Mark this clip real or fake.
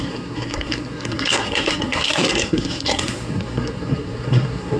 fake